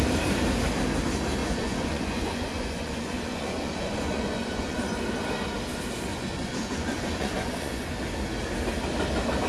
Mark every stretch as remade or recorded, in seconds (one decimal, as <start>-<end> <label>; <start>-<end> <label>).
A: 0.0-1.4 recorded; 1.4-4.8 remade; 4.8-6.1 recorded; 6.1-7.9 remade; 7.9-9.5 recorded